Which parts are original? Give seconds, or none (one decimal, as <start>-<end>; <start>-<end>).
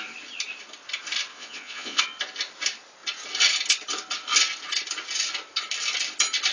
0.0-1.3; 2.0-6.5